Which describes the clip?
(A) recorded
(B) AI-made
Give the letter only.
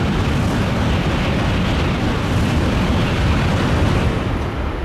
A